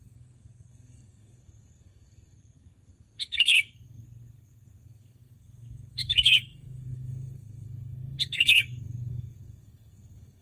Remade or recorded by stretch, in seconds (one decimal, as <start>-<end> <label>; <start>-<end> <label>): 0.0-10.4 remade